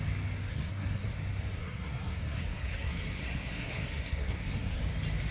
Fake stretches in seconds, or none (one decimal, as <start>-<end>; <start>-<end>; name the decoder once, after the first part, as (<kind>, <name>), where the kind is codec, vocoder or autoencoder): 0.5-1.1 (codec, SNAC); 1.6-4.8